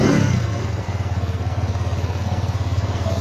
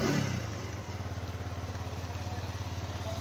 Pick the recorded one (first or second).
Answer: second